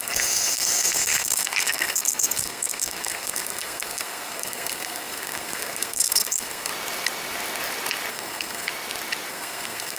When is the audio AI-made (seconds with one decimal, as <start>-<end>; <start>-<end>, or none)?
0.0-6.7; 8.1-8.7; 9.3-10.0